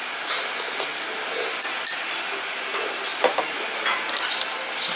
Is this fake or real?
real